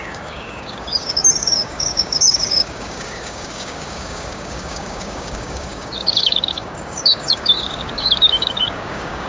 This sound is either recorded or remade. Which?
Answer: remade